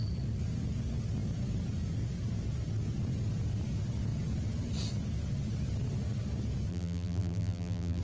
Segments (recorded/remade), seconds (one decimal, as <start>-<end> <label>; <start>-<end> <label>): 0.0-6.7 recorded; 6.7-8.0 remade